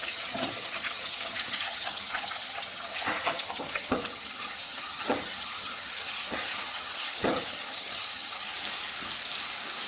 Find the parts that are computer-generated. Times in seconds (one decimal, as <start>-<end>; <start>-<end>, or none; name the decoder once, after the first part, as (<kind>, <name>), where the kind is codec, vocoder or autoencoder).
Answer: 0.0-8.5 (vocoder, HiFi-GAN)